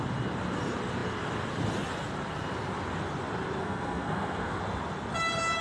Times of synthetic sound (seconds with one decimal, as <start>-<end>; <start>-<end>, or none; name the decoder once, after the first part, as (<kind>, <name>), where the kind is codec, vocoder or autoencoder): 3.6-4.6 (codec, SNAC)